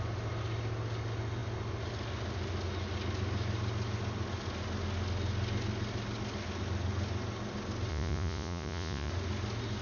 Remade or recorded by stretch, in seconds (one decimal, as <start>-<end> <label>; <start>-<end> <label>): 0.0-7.9 recorded; 7.9-9.1 remade; 9.1-9.8 recorded